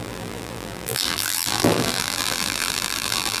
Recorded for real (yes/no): no